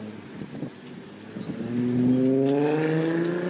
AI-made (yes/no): no